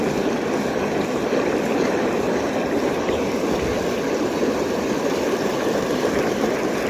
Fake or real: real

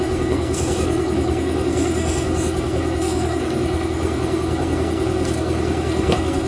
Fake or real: fake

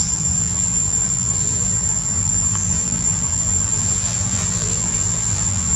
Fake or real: fake